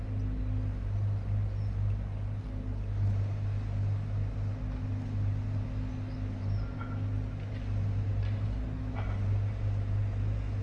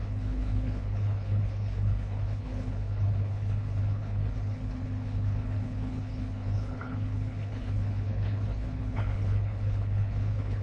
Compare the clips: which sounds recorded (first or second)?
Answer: first